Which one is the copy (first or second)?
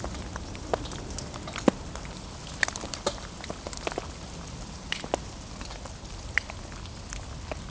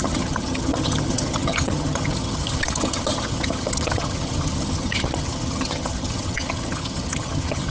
second